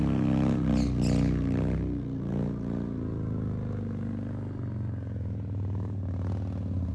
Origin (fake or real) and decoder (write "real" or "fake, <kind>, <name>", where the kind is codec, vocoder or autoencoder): real